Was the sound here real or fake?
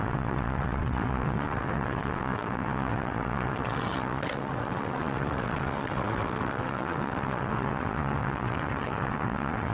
fake